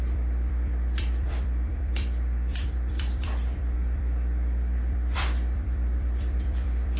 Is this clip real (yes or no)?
no